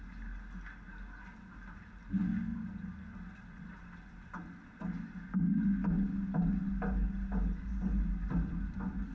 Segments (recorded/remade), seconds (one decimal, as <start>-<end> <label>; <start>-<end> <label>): 0.0-2.5 recorded; 2.5-3.7 remade; 3.7-9.1 recorded